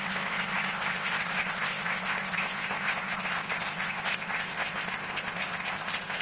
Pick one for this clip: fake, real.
fake